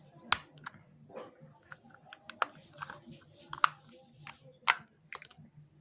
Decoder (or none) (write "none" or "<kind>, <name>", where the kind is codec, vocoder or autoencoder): none